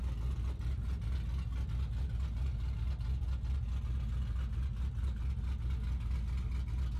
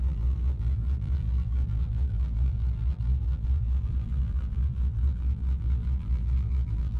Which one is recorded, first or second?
first